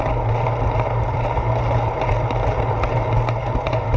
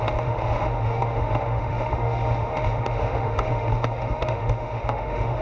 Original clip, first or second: first